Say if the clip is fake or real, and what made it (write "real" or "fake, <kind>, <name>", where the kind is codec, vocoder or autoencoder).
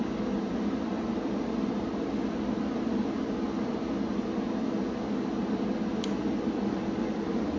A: real